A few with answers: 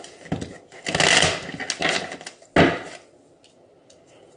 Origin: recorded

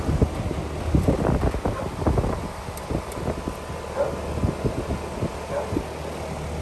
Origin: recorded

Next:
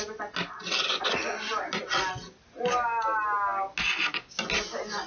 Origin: recorded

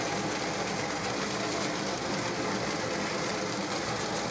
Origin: recorded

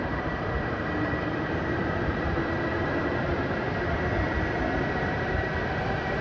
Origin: remade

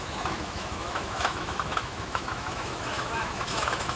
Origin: remade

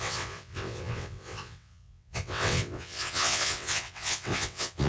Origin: remade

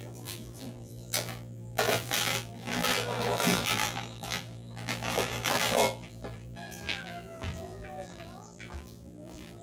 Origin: remade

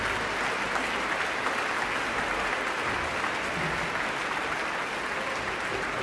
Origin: recorded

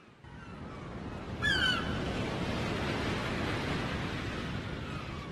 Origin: recorded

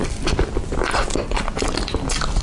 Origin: recorded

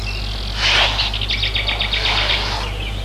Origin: recorded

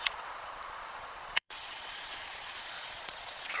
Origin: remade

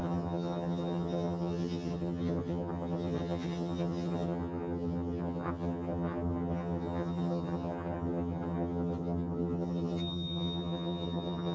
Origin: remade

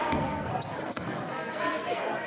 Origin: remade